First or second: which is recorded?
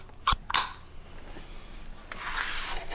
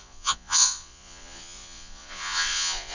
first